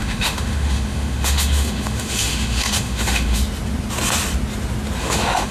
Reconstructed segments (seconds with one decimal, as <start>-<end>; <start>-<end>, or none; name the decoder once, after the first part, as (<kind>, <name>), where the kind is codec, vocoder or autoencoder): 0.0-3.4 (autoencoder, DAC-VAE); 5.0-5.5